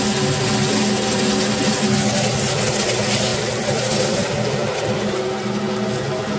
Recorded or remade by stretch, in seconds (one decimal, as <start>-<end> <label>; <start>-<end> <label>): 0.0-3.3 recorded; 3.3-6.4 remade